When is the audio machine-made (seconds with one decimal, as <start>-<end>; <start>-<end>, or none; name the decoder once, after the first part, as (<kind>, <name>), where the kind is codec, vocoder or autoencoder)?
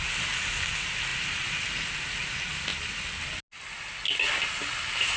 none